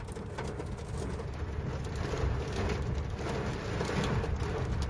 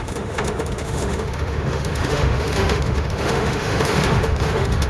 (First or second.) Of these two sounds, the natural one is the first